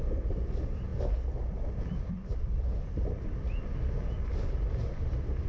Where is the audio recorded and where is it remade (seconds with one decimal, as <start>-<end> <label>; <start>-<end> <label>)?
0.0-5.5 recorded